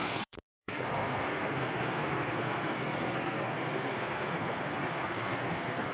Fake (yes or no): yes